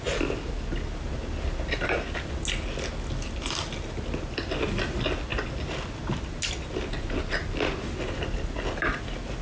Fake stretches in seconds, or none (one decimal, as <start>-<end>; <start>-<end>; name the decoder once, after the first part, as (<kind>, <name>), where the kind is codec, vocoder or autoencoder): none